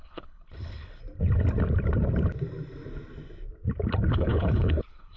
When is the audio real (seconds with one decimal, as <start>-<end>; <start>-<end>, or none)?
1.0-4.1